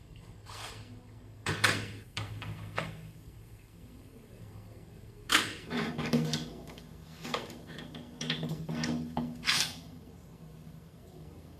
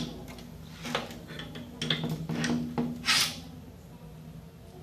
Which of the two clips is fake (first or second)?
first